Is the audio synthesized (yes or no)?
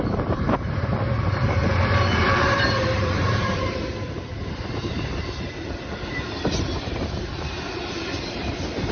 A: yes